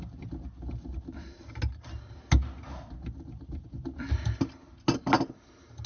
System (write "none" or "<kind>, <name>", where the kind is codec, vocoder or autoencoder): none